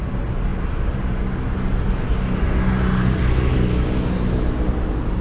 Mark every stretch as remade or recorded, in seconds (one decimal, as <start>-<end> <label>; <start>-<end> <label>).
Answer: 0.0-5.2 recorded